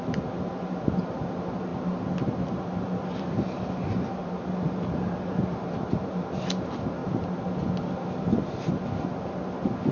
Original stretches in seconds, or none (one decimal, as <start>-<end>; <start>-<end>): 0.0-9.9